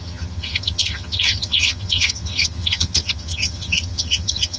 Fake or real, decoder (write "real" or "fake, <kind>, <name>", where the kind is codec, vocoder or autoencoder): fake, vocoder, HiFi-GAN